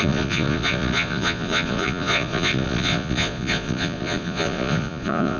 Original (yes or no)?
no